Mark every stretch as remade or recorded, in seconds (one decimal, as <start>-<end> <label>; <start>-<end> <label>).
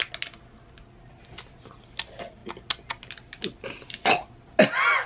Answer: 0.0-5.1 recorded